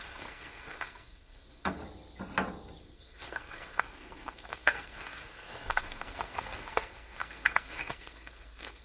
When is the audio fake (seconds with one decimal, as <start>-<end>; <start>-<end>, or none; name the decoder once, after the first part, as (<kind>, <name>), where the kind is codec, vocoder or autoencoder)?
0.0-1.8 (codec, SNAC); 2.8-8.8